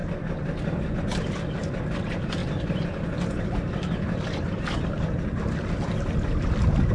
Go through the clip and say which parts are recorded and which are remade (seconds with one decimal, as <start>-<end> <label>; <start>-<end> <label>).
0.0-1.9 remade; 1.9-2.4 recorded; 2.4-6.5 remade; 6.5-6.9 recorded